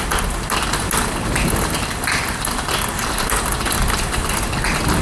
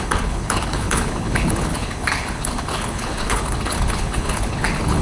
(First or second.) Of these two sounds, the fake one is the second